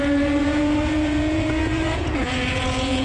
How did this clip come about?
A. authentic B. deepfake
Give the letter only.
B